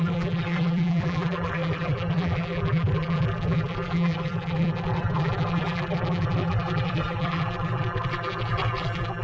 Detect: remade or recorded remade